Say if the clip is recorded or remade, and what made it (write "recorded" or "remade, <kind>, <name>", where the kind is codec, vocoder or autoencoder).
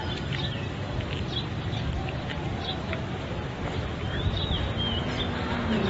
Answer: recorded